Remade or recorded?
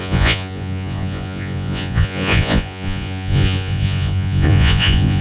remade